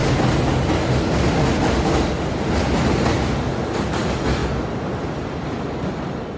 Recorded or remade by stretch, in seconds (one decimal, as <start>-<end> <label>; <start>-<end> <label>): 0.0-6.4 recorded